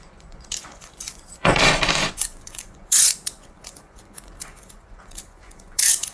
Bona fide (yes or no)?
no